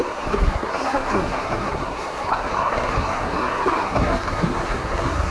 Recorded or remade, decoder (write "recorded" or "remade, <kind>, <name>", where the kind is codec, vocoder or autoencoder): remade, codec, SNAC